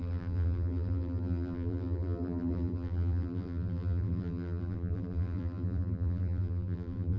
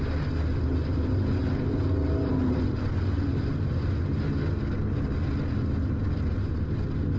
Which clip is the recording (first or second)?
second